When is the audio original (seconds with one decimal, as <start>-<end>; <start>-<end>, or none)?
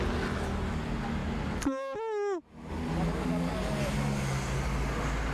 0.0-5.3